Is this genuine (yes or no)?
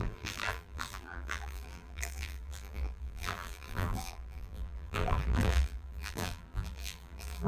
no